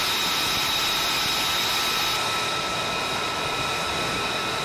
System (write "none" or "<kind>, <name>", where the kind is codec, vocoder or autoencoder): none